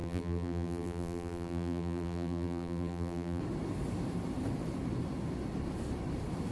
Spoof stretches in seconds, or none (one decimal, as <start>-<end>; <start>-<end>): 0.0-3.4